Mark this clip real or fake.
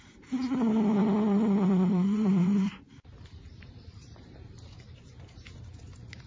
fake